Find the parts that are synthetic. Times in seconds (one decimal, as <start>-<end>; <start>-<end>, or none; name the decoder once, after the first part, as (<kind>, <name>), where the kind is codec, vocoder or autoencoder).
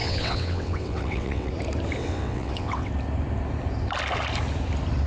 0.0-1.5 (vocoder, WaveNeXt); 2.0-2.9